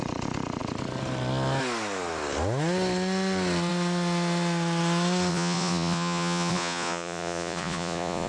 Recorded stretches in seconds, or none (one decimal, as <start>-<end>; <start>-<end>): 0.0-5.3